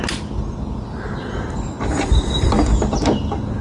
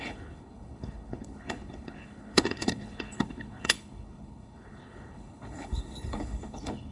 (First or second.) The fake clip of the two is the second